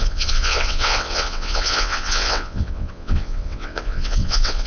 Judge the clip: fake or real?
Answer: fake